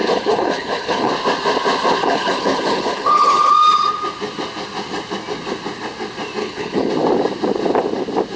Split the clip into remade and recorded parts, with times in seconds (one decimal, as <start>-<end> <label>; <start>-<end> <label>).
0.0-1.1 remade; 1.1-2.0 recorded; 2.0-3.5 remade; 3.5-6.4 recorded; 6.4-6.9 remade; 6.9-8.4 recorded